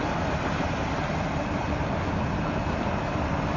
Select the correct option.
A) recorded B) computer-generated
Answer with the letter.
A